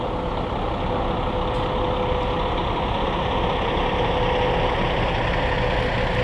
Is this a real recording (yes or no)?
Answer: yes